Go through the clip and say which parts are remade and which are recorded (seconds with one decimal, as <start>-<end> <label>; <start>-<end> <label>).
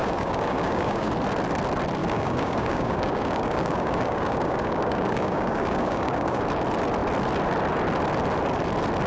0.0-1.1 remade; 1.1-2.0 recorded; 2.0-6.4 remade; 6.4-9.1 recorded